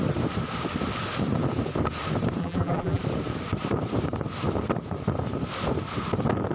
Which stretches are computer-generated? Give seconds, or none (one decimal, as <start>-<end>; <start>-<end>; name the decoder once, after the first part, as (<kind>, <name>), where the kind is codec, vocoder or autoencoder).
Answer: 2.4-3.0 (vocoder, BigVGAN v2)